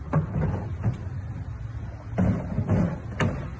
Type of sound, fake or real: real